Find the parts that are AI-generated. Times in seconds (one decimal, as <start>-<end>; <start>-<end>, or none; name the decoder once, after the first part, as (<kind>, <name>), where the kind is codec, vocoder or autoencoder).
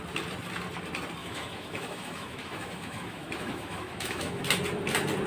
1.2-4.4 (autoencoder, DAC-VAE)